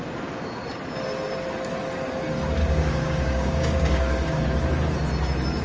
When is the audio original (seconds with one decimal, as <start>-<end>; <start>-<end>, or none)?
0.0-2.6; 4.4-5.6